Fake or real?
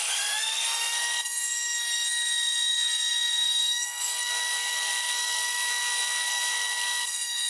fake